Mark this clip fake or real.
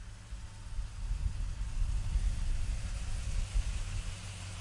real